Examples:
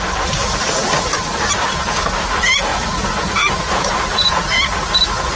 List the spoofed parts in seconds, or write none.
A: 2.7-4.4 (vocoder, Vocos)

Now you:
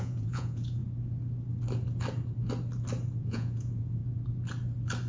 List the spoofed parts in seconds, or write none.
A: 0.0-0.8 (vocoder, Vocos); 3.2-4.0

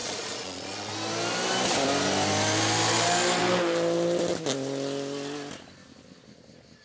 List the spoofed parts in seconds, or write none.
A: 0.0-0.9 (vocoder, Vocos)

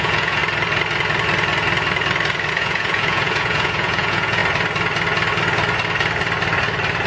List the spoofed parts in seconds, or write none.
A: 0.0-0.4 (vocoder, Vocos); 2.5-4.4

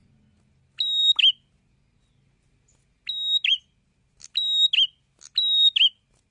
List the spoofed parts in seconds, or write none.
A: none